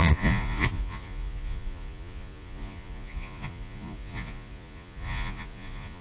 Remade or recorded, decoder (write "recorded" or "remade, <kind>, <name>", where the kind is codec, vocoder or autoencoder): remade, vocoder, Vocos